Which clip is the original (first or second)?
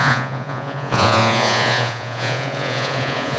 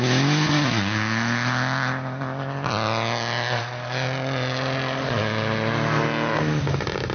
second